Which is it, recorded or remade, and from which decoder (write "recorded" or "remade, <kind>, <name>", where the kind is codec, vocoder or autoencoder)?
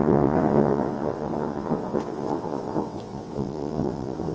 remade, vocoder, WaveNeXt